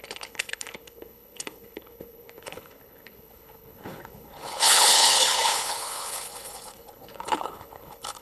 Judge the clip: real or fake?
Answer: fake